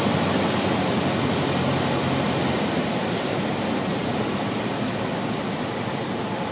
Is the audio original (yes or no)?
yes